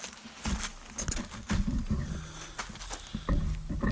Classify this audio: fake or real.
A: real